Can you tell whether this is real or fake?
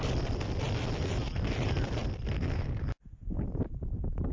real